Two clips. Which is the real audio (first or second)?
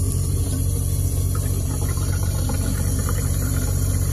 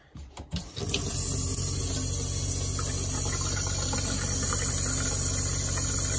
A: second